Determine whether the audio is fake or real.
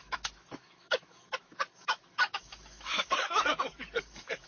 fake